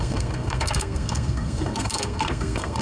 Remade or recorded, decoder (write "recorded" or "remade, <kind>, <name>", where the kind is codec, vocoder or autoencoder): remade, codec, SNAC